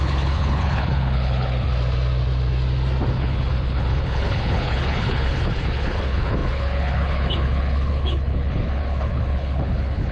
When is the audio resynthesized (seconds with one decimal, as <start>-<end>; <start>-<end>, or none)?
0.0-1.7; 3.1-10.1